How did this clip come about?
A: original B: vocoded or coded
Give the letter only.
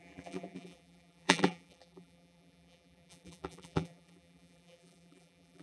B